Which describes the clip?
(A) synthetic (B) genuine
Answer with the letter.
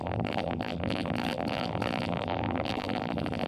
A